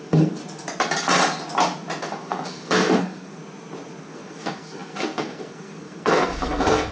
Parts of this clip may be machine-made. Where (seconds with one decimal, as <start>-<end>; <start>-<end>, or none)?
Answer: 0.0-0.4; 2.0-3.4; 4.0-6.9